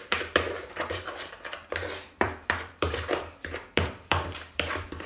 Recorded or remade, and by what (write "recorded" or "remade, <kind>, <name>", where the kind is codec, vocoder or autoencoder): remade, vocoder, BigVGAN v2